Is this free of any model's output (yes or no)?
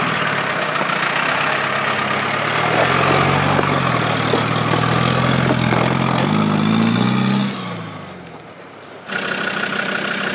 yes